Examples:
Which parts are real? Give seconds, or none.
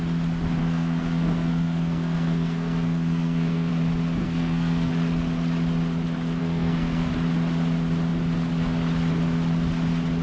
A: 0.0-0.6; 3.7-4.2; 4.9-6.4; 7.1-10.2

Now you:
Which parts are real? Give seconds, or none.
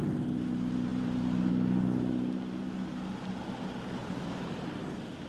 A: 0.0-0.9; 1.5-4.0; 4.7-5.3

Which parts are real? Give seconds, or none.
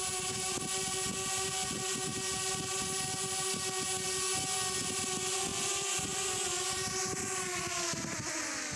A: 0.0-5.5; 6.3-8.8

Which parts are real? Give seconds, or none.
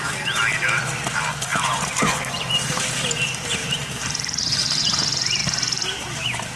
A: 0.0-1.5; 2.9-3.6; 4.8-5.4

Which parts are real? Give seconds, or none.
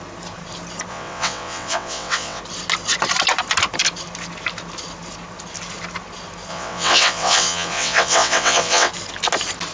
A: 0.0-0.9; 2.4-6.5; 8.9-9.7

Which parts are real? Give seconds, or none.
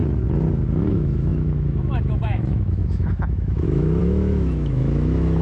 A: 0.0-0.9